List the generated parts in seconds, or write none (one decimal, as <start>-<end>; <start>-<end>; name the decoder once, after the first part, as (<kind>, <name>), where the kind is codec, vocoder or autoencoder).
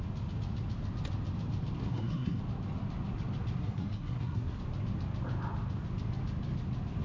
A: 1.8-2.4 (codec, SNAC); 3.6-4.6